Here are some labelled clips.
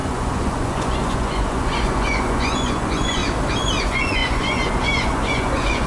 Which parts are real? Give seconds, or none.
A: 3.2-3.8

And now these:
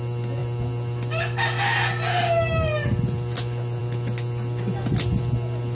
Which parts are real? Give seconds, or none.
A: 0.0-5.7

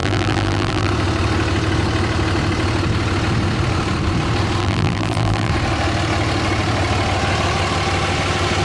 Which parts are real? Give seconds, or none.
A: 0.9-4.6; 5.5-8.6

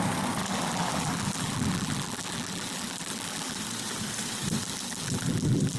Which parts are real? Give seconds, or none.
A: 0.0-0.4; 3.6-4.6

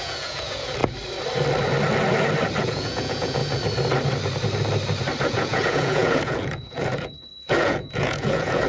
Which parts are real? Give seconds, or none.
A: 0.8-2.6; 3.4-5.2